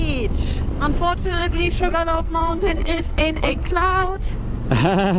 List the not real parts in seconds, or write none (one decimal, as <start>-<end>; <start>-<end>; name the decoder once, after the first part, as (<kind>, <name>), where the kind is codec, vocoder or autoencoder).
1.2-4.3 (codec, SNAC)